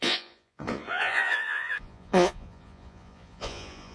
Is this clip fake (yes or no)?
yes